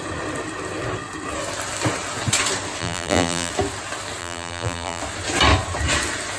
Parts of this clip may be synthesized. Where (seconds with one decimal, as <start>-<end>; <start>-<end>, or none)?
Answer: 2.8-3.5; 4.2-5.0